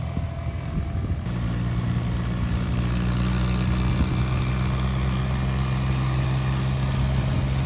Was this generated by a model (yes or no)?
no